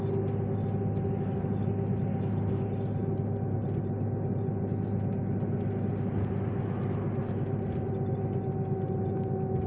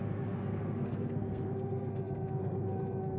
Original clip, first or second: first